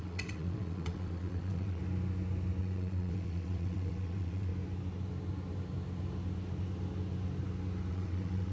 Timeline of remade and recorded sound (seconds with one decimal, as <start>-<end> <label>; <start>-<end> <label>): 0.0-1.8 remade; 1.8-2.6 recorded; 2.6-4.5 remade; 4.5-7.9 recorded; 7.9-8.5 remade